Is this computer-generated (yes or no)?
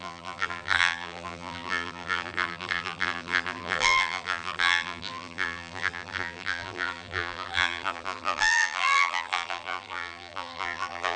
yes